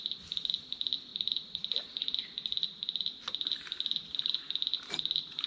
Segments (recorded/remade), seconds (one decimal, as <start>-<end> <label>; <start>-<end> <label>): 0.0-5.5 recorded